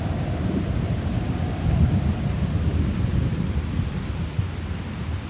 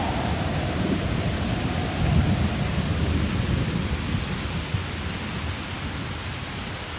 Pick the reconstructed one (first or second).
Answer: first